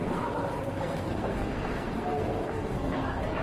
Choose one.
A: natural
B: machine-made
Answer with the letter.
B